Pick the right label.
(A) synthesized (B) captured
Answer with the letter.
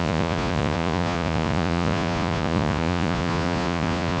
A